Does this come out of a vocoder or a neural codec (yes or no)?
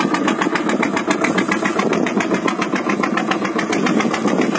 no